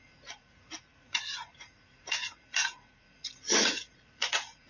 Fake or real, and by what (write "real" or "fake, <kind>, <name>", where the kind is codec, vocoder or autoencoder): fake, vocoder, Vocos